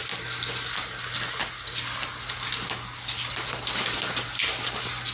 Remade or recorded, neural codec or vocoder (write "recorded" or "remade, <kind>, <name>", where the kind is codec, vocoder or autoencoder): recorded